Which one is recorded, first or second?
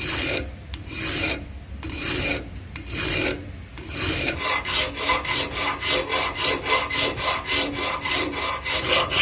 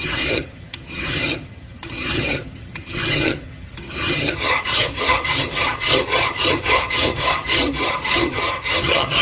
first